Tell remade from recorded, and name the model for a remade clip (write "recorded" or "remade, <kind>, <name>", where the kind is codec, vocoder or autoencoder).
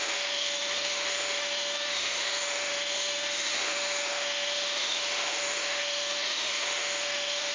remade, autoencoder, DAC-VAE